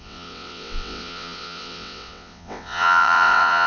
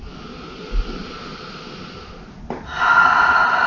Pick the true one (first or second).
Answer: second